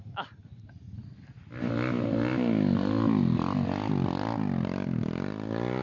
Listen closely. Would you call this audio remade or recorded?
recorded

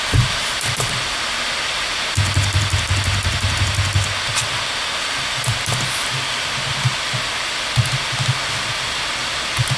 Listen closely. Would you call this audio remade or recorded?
recorded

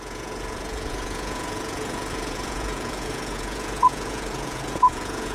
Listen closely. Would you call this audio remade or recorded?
remade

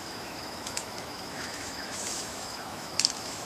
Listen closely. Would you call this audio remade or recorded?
remade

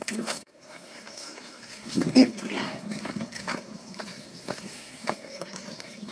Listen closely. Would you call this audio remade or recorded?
remade